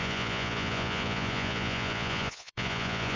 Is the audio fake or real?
fake